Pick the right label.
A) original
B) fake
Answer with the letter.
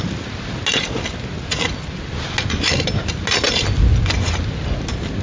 A